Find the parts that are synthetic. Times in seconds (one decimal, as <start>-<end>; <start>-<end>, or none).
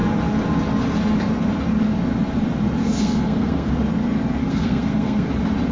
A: 2.8-3.7; 4.4-5.3